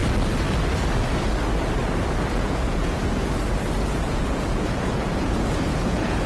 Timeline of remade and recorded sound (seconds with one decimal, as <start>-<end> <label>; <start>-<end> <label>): 0.0-2.3 recorded; 2.3-3.0 remade; 3.0-4.1 recorded; 4.1-6.3 remade